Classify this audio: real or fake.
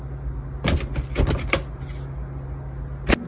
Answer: real